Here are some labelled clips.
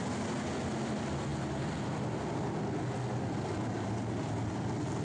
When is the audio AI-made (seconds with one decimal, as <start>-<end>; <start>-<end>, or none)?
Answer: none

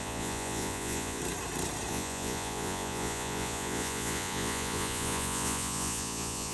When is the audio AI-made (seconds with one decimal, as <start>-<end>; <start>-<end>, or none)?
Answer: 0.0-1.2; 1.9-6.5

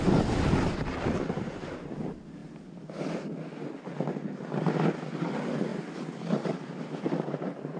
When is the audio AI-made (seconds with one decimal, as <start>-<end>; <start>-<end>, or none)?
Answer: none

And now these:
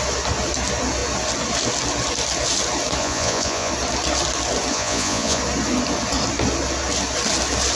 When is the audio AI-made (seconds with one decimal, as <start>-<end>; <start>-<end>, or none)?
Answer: 3.0-3.7; 4.7-5.4

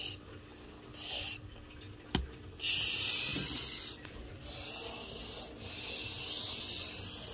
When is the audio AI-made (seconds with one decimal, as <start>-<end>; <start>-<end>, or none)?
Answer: none

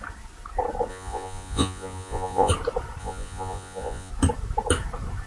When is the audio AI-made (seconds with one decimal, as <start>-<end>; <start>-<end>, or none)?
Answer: 0.9-2.5; 3.0-4.1

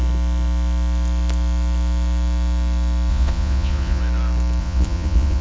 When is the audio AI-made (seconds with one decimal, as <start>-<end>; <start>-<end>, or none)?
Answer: 3.1-4.0; 4.6-5.4